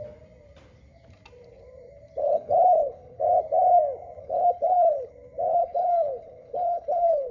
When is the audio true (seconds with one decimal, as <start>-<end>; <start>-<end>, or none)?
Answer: 0.0-2.2; 3.2-4.2; 5.1-5.5